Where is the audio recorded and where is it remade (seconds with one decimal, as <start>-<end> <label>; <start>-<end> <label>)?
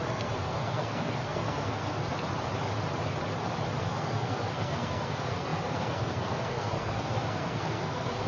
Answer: 0.0-2.1 remade; 2.1-3.8 recorded; 3.8-8.3 remade